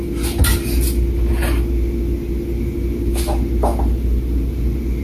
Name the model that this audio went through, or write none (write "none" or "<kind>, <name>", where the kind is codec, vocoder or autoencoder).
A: none